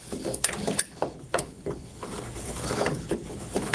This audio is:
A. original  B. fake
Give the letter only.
B